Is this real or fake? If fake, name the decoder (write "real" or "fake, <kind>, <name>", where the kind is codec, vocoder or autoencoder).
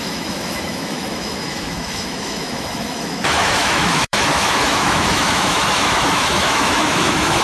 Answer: fake, autoencoder, DAC-VAE